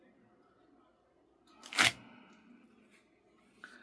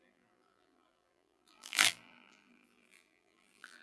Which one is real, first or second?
first